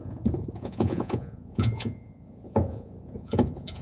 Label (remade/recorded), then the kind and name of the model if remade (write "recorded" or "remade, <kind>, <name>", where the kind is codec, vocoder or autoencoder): remade, vocoder, Vocos